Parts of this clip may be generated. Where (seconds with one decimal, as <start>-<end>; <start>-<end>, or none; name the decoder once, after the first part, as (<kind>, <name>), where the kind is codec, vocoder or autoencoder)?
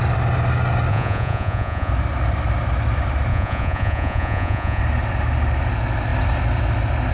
0.9-1.9 (vocoder, Vocos); 3.3-4.8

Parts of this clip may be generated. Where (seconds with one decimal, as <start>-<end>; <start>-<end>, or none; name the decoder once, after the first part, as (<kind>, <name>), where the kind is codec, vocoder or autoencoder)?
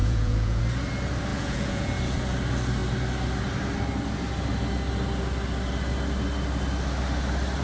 0.0-0.6 (vocoder, Vocos); 1.3-1.9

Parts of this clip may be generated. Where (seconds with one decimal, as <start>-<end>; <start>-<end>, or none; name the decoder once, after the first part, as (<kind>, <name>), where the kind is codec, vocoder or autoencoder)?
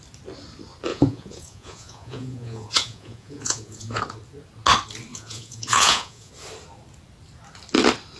0.9-4.0 (vocoder, Vocos); 5.1-6.3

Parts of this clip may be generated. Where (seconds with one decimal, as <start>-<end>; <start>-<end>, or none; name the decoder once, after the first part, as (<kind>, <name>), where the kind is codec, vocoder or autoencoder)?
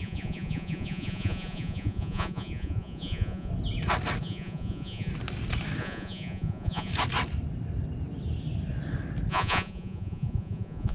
0.0-3.5 (vocoder, Vocos); 4.2-5.1; 5.8-6.9; 9.3-10.9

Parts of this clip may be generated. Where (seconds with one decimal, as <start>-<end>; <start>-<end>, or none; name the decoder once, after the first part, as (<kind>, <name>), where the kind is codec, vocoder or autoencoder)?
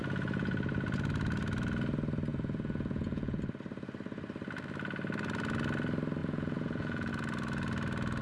2.3-3.4 (vocoder, Vocos); 6.2-7.1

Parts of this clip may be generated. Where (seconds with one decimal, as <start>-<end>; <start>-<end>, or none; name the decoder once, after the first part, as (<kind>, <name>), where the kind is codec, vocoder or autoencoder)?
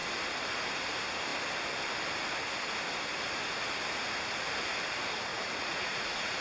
5.3-6.4 (vocoder, Vocos)